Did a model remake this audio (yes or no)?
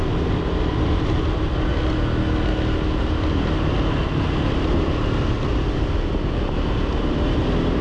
no